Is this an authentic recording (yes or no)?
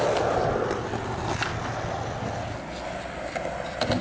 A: yes